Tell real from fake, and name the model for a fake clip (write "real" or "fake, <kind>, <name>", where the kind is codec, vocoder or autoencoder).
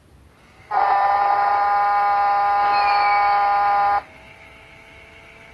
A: real